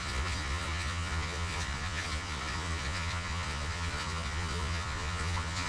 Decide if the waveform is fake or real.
fake